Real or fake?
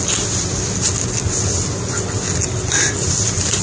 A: real